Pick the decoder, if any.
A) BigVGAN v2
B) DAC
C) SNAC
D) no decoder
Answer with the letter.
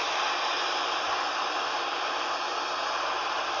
A